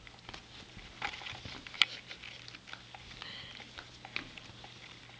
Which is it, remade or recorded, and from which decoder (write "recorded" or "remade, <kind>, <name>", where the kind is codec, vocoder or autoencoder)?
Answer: recorded